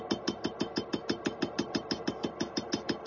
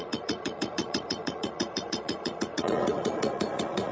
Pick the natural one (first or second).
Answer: first